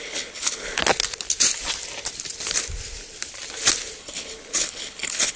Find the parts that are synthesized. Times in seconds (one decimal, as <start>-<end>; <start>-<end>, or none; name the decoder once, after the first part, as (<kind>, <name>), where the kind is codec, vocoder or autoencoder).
0.0-0.8 (codec, HILCodec); 4.0-5.4